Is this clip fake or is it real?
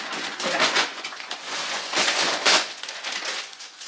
fake